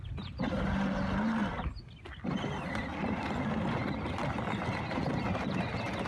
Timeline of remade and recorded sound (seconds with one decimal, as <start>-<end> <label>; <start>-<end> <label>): 0.0-6.1 recorded